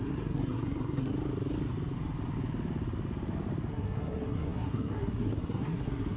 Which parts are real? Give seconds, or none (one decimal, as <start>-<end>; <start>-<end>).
1.1-3.7